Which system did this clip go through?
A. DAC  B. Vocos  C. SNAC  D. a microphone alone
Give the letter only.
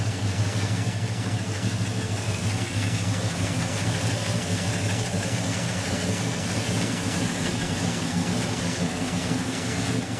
C